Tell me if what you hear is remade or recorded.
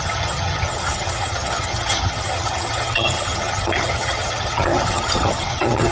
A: remade